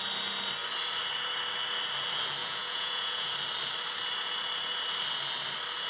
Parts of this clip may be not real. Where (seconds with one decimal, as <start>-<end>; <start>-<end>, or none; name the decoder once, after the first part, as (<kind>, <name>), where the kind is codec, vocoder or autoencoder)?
2.4-3.3 (vocoder, Vocos)